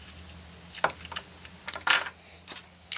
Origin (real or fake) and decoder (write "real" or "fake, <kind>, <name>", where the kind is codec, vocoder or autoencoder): real